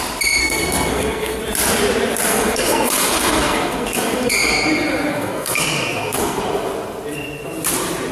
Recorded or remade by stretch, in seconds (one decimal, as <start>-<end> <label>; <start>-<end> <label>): 0.0-0.4 recorded; 0.4-1.4 remade; 1.4-2.3 recorded; 2.3-4.3 remade; 4.3-5.1 recorded; 5.1-6.4 remade; 6.4-8.1 recorded